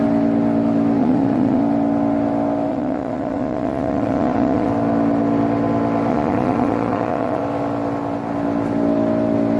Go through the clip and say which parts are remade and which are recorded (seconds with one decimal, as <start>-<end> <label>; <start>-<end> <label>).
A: 0.0-1.0 recorded; 1.0-1.6 remade; 1.6-2.7 recorded; 2.7-4.7 remade; 4.7-6.1 recorded; 6.1-7.4 remade; 7.4-9.6 recorded